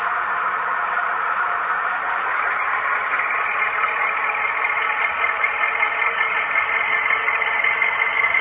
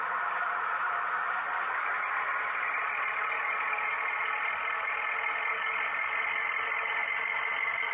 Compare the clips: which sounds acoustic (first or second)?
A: second